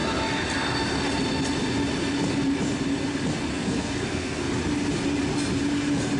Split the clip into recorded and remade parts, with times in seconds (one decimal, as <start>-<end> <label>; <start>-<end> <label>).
0.0-3.5 recorded; 3.5-4.5 remade; 4.5-6.2 recorded

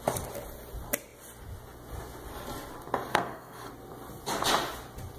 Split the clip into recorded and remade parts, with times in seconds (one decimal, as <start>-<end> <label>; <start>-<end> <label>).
0.0-3.1 recorded; 3.1-3.7 remade; 3.7-5.2 recorded

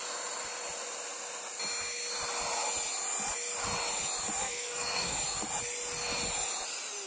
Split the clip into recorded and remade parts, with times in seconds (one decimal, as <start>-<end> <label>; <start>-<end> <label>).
0.0-4.4 recorded; 4.4-5.2 remade; 5.2-7.1 recorded

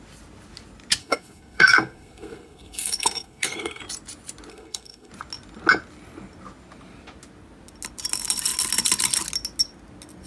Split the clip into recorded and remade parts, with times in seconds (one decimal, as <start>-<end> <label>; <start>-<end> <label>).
0.0-1.0 recorded; 1.0-3.8 remade; 3.8-4.5 recorded; 4.5-5.1 remade; 5.1-10.3 recorded

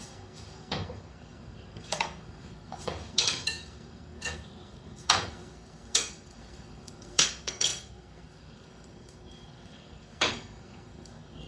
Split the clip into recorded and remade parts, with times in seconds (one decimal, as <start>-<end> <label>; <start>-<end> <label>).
0.0-11.5 remade

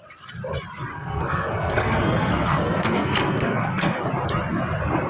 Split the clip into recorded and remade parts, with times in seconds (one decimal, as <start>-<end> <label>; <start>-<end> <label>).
0.0-0.9 recorded; 0.9-4.0 remade; 4.0-5.1 recorded

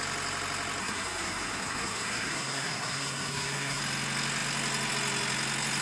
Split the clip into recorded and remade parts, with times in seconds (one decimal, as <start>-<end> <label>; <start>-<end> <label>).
0.0-0.8 recorded; 0.8-3.8 remade; 3.8-5.8 recorded